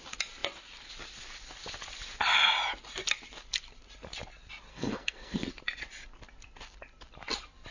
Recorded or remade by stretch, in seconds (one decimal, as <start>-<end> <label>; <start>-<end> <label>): 0.0-4.7 recorded; 4.7-5.5 remade; 5.5-7.7 recorded